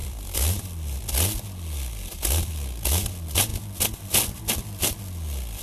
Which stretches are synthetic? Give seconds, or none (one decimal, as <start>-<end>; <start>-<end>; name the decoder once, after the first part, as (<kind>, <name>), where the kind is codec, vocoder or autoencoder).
0.0-1.0 (vocoder, BigVGAN v2)